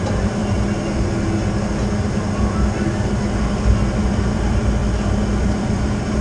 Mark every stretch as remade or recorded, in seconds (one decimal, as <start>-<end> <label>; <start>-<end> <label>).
0.0-0.4 remade; 0.4-4.1 recorded; 4.1-4.8 remade; 4.8-5.4 recorded; 5.4-6.2 remade